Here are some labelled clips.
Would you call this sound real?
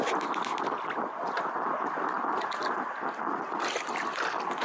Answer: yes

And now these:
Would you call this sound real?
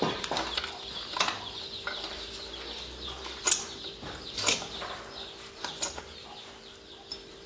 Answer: yes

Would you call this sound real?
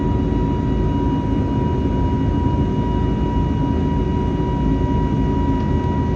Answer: yes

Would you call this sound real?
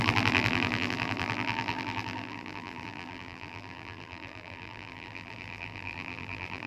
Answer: no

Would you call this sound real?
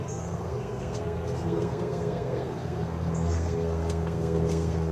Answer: no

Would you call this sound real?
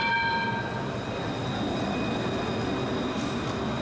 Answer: yes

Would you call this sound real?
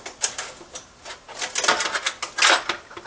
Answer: yes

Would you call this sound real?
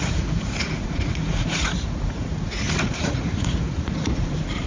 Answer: no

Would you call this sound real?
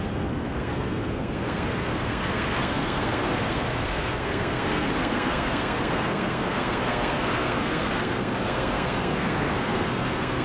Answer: no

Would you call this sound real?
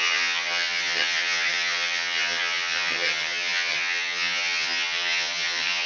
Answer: no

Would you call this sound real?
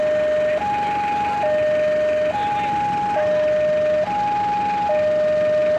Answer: yes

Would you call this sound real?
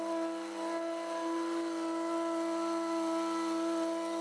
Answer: yes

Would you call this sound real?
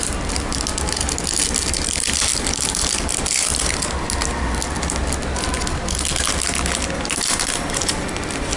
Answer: yes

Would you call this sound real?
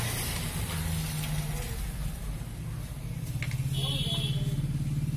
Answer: yes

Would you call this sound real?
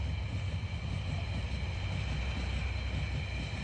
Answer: yes